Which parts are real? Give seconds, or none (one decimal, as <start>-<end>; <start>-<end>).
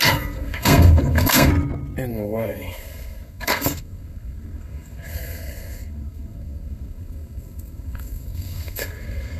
1.5-2.1